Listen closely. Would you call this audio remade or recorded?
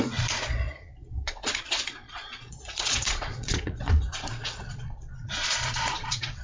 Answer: remade